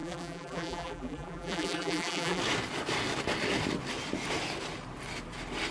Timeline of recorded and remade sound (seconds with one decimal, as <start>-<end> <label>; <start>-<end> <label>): 0.0-2.4 remade; 2.4-5.7 recorded